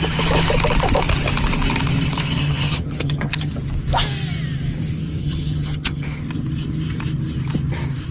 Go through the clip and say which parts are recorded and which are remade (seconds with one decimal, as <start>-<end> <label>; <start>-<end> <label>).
0.0-2.4 recorded; 2.4-3.5 remade; 3.5-5.2 recorded; 5.2-6.2 remade; 6.2-8.1 recorded